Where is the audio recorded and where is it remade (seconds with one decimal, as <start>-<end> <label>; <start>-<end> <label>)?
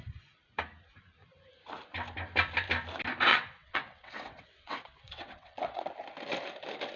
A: 0.0-3.3 recorded; 3.3-5.8 remade; 5.8-7.0 recorded